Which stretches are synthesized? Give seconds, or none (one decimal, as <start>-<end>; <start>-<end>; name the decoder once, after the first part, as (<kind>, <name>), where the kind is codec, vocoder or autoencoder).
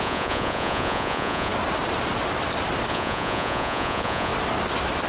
0.0-1.5 (vocoder, Vocos); 2.9-4.3